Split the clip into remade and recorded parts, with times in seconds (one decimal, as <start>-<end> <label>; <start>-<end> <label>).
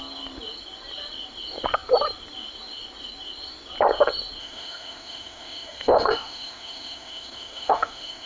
0.0-4.4 recorded; 4.4-8.3 remade